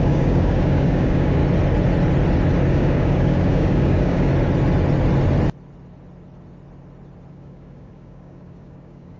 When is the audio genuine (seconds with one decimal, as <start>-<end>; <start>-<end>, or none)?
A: 1.4-2.7; 4.3-7.3